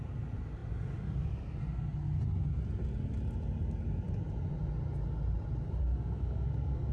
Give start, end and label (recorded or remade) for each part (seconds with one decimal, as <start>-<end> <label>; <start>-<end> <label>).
0.0-5.8 recorded; 5.8-6.9 remade